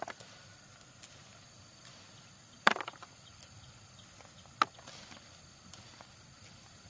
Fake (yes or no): no